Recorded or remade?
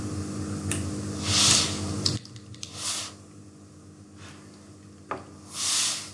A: recorded